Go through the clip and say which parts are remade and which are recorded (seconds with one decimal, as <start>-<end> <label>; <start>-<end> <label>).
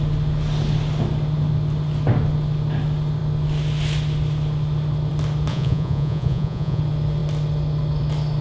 0.0-5.5 recorded; 5.5-6.8 remade; 6.8-8.4 recorded